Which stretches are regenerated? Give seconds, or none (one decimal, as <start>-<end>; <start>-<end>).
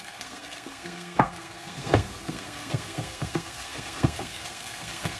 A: 0.0-5.2